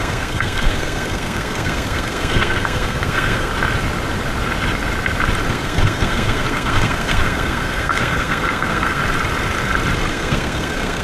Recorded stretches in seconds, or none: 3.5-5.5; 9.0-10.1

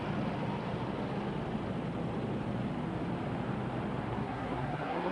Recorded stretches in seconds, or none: 0.0-4.1

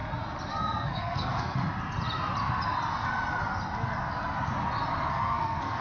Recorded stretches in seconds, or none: 0.0-0.5; 1.6-5.1